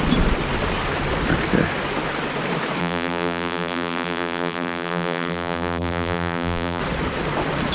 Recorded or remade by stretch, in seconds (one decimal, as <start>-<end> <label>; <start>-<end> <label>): 0.0-2.8 recorded; 2.8-6.8 remade; 6.8-7.7 recorded